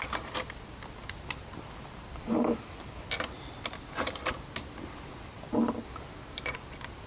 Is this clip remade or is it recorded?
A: recorded